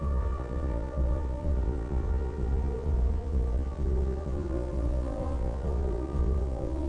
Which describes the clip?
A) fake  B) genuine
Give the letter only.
A